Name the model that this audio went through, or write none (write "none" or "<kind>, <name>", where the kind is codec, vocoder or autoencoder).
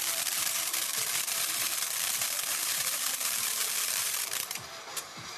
vocoder, BigVGAN v2